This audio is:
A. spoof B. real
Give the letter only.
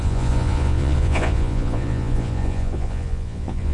A